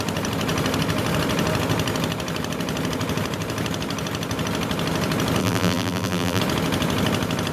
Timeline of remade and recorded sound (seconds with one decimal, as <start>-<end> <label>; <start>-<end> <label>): 0.0-5.4 recorded; 5.4-6.4 remade; 6.4-7.5 recorded